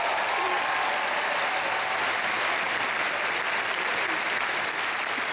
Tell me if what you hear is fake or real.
real